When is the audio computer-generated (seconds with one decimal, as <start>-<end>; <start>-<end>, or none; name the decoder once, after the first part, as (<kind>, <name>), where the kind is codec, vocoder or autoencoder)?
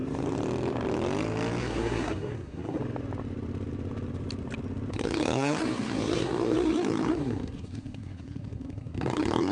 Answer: 1.6-2.8 (codec, SNAC); 4.9-9.5